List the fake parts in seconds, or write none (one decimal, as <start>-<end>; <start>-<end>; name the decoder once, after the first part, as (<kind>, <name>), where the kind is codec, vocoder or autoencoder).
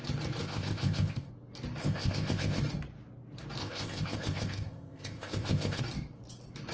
0.4-1.3 (codec, ZipCodec); 1.8-2.6; 3.6-5.8